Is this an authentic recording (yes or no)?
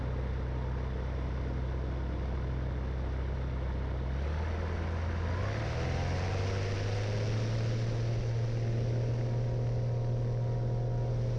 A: yes